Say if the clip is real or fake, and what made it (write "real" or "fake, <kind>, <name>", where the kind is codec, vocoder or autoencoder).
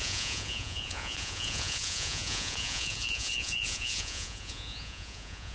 fake, vocoder, Vocos